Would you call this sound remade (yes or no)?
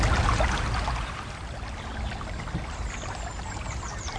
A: no